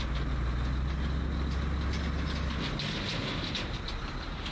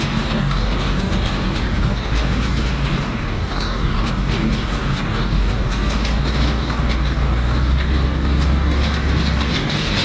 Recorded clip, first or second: first